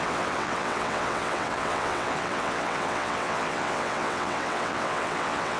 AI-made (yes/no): yes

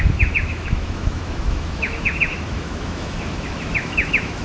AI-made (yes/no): yes